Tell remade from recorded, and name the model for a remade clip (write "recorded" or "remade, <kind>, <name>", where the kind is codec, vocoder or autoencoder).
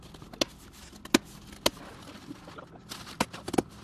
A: recorded